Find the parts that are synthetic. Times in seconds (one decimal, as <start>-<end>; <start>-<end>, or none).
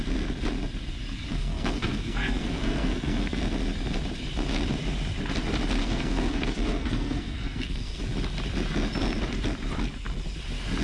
1.3-3.4; 5.8-8.0